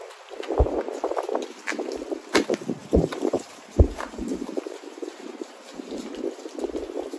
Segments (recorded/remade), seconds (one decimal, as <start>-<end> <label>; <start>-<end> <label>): 0.0-2.8 recorded; 2.8-6.0 remade; 6.0-7.2 recorded